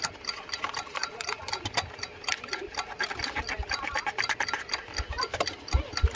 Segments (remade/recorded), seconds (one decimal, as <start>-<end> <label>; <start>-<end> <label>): 0.0-6.2 recorded